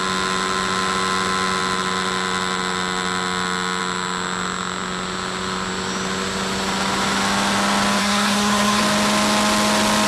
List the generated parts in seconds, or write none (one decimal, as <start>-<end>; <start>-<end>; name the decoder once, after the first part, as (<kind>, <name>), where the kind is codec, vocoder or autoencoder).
8.0-8.8 (codec, SNAC)